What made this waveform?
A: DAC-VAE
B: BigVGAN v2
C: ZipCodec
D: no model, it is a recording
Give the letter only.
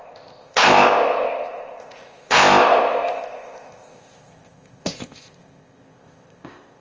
C